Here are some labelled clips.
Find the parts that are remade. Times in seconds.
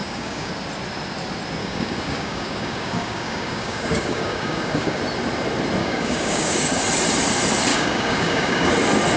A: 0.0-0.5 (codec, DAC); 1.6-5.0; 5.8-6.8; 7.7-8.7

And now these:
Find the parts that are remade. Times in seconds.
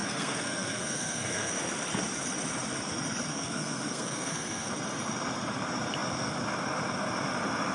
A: 0.0-1.5 (codec, SNAC); 3.3-4.7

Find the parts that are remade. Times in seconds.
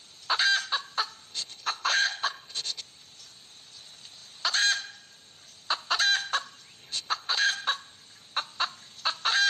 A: 1.3-2.8 (codec, HILCodec); 6.8-7.5